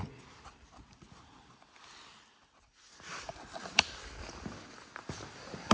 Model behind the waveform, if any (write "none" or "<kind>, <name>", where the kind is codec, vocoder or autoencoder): none